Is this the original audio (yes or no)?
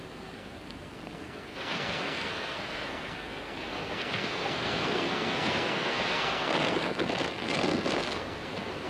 no